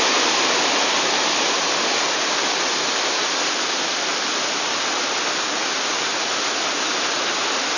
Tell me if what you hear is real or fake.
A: real